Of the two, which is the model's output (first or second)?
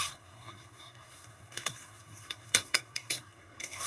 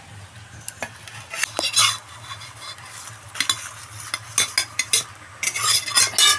first